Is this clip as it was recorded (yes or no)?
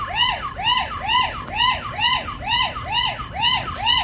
yes